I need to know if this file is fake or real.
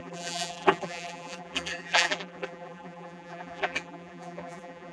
fake